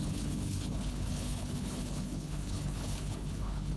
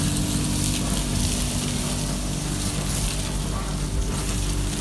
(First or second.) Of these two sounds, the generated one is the first